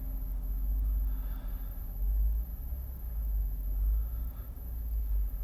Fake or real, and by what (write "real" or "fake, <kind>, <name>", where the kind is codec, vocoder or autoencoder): real